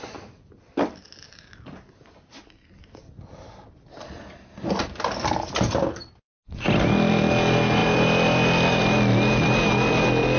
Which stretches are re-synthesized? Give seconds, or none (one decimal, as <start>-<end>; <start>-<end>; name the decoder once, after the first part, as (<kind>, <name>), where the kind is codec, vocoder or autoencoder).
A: none